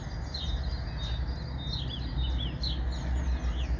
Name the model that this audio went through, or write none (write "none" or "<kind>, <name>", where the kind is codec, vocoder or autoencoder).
none